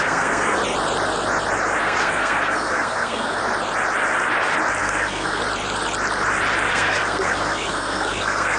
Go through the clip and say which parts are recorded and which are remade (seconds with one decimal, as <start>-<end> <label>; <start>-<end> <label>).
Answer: 0.0-0.6 remade; 0.6-1.8 recorded; 1.8-3.4 remade; 3.4-4.8 recorded; 4.8-5.4 remade; 5.4-6.7 recorded; 6.7-8.6 remade

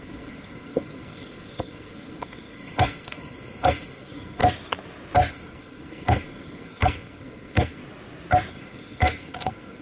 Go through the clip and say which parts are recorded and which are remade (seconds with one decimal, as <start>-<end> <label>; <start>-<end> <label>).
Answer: 0.0-4.4 remade; 4.4-5.3 recorded; 5.3-7.8 remade; 7.8-8.5 recorded; 8.5-9.8 remade

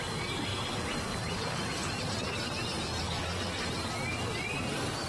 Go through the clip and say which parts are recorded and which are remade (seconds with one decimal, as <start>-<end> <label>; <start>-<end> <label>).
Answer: 0.0-5.1 recorded

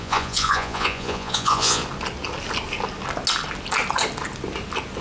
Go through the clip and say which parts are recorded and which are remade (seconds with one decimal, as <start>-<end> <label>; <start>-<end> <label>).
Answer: 0.0-1.8 remade; 1.8-5.0 recorded

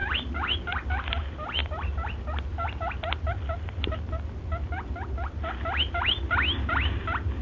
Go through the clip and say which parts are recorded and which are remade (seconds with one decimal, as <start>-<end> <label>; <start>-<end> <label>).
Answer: 0.0-7.4 recorded

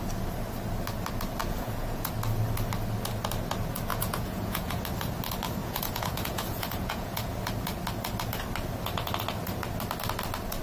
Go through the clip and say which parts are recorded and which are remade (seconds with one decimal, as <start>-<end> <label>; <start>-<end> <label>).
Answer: 0.0-1.4 recorded; 1.4-2.1 remade; 2.1-3.9 recorded; 3.9-4.8 remade; 4.8-5.6 recorded; 5.6-7.4 remade; 7.4-10.6 recorded

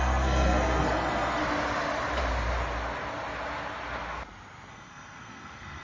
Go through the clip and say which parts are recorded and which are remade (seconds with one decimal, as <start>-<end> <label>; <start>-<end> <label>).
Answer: 0.0-1.4 remade; 1.4-4.7 recorded; 4.7-5.8 remade